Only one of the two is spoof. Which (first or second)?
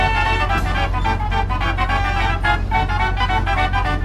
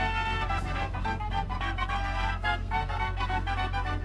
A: second